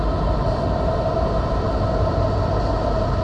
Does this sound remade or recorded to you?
recorded